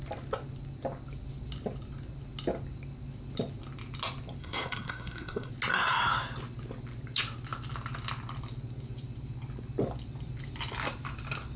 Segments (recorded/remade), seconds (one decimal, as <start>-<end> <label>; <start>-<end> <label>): 0.0-4.4 recorded; 4.4-5.5 remade; 5.5-11.6 recorded